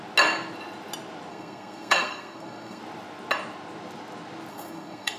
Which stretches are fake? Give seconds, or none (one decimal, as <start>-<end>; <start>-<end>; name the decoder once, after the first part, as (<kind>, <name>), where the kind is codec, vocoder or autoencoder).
1.3-2.8 (codec, SNAC); 4.5-5.2